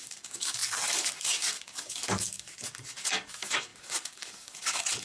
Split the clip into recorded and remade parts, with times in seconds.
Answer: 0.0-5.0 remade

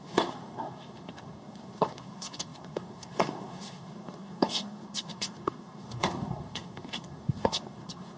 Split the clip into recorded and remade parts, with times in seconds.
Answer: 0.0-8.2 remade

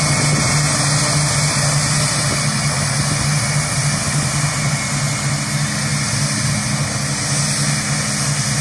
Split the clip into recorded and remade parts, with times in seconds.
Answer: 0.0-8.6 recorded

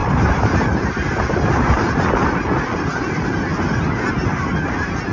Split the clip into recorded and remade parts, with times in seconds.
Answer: 0.0-1.9 remade; 1.9-5.1 recorded